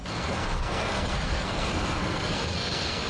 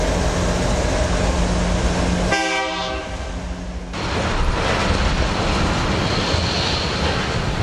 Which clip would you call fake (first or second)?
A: first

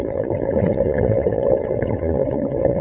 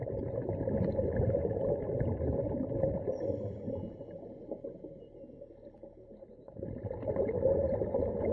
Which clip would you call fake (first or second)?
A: first